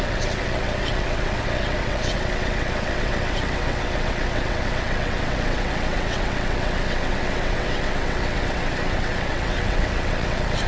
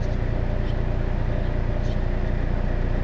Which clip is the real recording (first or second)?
second